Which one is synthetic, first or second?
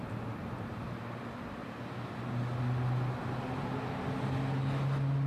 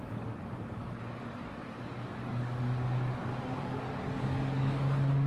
second